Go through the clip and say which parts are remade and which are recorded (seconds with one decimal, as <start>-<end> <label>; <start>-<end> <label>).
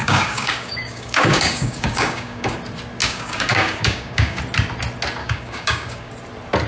0.0-2.6 remade; 2.6-3.0 recorded; 3.0-4.4 remade; 4.4-5.2 recorded; 5.2-6.1 remade; 6.1-6.7 recorded